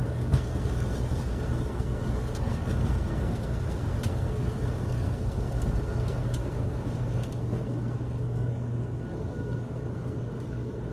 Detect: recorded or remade remade